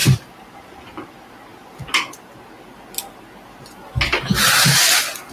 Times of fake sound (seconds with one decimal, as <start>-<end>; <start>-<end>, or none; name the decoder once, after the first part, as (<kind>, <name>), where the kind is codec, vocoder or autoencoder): 0.0-1.1 (vocoder, BigVGAN v2)